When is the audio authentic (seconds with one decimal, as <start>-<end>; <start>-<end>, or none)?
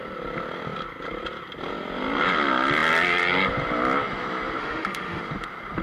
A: 0.0-4.6; 5.2-5.8